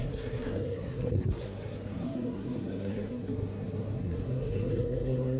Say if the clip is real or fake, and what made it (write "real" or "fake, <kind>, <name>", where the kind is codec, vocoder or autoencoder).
fake, codec, SNAC